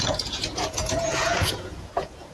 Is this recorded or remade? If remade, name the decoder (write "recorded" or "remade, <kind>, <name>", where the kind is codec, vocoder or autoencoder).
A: remade, vocoder, Vocos